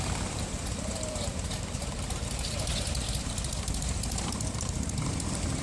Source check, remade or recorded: remade